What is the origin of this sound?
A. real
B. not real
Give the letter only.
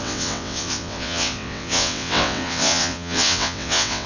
B